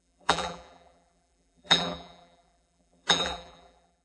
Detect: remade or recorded remade